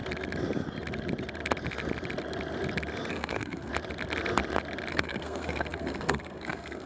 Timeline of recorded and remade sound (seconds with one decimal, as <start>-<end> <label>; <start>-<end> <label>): 0.0-3.1 recorded; 3.1-3.7 remade; 3.7-4.9 recorded; 4.9-6.9 remade